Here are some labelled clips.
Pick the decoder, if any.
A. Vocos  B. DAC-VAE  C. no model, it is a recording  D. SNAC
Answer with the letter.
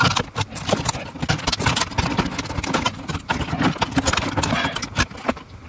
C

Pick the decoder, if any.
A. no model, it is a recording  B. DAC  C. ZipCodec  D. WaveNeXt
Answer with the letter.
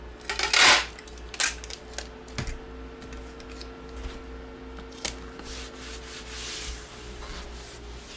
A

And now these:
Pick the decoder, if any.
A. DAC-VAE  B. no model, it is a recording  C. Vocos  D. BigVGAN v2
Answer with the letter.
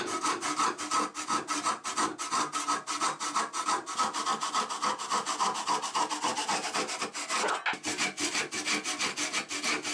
B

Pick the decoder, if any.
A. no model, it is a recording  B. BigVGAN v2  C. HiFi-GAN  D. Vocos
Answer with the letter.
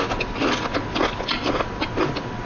A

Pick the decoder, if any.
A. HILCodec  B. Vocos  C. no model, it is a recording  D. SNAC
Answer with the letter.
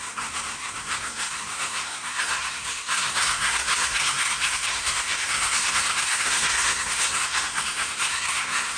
D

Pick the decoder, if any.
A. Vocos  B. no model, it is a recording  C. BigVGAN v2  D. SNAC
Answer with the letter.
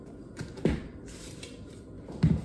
B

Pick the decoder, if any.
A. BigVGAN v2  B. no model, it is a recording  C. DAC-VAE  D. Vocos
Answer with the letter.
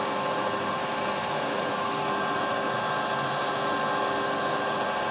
B